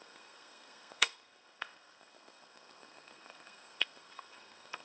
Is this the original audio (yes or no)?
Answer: no